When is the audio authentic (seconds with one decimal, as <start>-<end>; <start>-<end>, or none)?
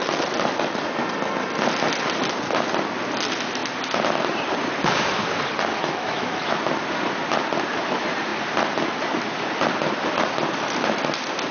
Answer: 0.0-5.7; 6.5-11.5